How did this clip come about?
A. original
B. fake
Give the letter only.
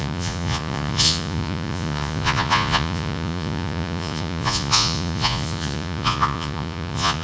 B